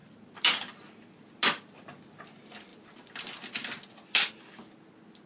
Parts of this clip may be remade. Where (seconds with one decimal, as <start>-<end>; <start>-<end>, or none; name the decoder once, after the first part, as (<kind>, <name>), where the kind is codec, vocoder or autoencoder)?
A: none